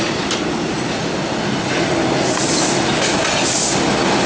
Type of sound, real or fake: real